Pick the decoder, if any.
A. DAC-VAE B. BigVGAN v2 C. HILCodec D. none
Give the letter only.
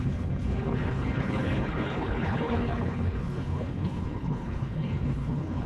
C